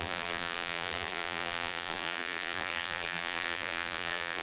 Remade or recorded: remade